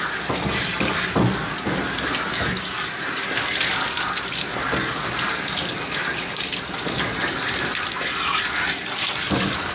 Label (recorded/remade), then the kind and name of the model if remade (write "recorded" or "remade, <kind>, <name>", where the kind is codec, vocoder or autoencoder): recorded